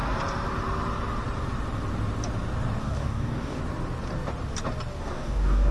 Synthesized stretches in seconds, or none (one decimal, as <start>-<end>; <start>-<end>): 2.8-3.6; 5.0-5.7